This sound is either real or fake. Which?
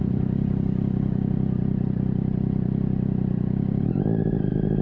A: real